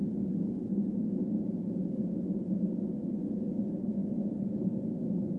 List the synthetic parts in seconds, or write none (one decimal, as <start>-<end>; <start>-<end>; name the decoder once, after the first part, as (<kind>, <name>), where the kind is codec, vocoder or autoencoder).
none